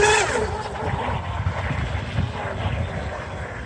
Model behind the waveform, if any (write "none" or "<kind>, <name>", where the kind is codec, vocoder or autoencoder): none